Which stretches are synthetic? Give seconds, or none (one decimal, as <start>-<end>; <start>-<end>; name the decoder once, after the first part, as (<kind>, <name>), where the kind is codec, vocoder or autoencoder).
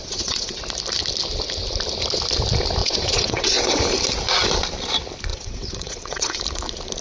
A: 0.0-0.6 (vocoder, WaveNeXt); 2.8-3.8; 5.3-6.4